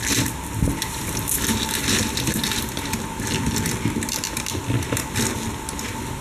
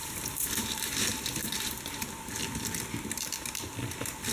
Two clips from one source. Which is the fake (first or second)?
second